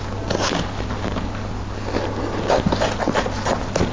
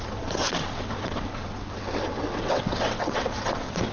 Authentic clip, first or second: first